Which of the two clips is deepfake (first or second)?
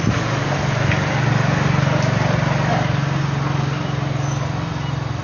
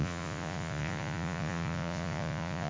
second